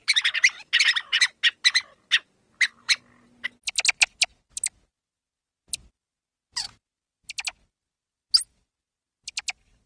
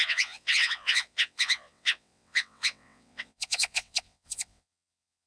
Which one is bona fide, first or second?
first